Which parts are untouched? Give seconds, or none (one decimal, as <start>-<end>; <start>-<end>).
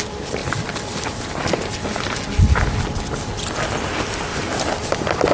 0.0-0.4; 1.7-4.3